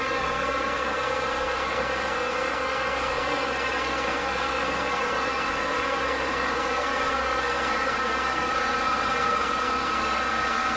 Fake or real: fake